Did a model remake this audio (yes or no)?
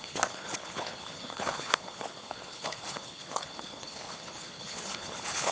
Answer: yes